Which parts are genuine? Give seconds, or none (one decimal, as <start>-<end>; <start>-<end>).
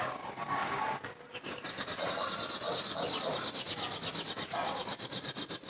0.0-2.6; 3.3-5.7